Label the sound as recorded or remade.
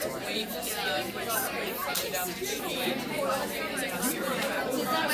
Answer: remade